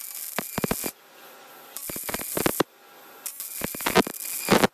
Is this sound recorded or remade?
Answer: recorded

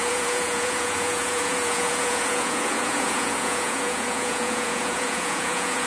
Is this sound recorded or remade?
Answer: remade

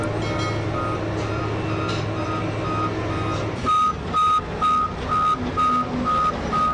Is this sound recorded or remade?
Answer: recorded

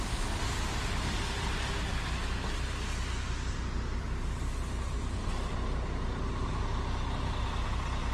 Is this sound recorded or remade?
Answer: recorded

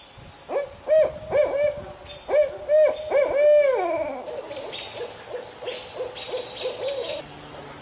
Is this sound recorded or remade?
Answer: recorded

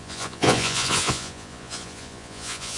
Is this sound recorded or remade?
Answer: remade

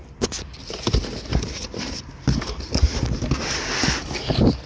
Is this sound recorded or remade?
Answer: recorded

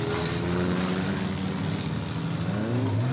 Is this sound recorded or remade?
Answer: recorded